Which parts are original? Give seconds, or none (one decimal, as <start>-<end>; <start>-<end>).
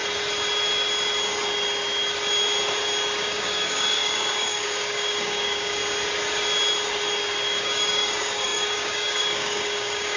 0.0-3.2; 5.8-7.6